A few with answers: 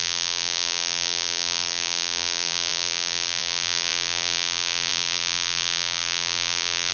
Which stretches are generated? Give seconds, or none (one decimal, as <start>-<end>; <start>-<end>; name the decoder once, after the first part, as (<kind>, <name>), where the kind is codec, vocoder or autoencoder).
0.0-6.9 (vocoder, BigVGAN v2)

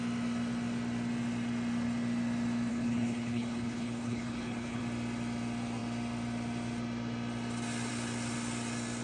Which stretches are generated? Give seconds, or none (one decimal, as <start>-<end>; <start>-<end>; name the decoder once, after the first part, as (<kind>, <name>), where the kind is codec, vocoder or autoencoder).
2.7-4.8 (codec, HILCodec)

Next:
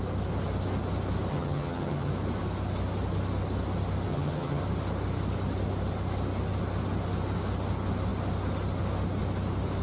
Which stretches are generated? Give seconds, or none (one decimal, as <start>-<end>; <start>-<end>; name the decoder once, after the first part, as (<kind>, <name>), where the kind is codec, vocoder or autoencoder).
1.3-2.1 (vocoder, HiFi-GAN); 4.1-4.6

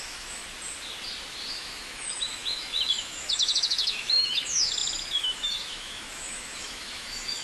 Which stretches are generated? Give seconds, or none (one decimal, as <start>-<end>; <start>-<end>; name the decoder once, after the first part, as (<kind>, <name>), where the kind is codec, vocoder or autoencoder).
0.0-0.4 (autoencoder, DAC-VAE); 1.5-7.4